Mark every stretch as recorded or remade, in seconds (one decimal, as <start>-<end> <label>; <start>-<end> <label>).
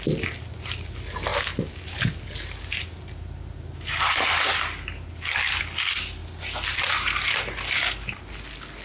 0.0-8.8 recorded